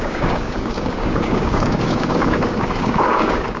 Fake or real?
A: fake